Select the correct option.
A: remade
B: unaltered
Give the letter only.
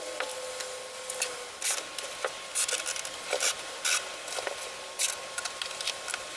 B